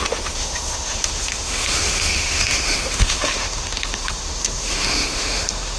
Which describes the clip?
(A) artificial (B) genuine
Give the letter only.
A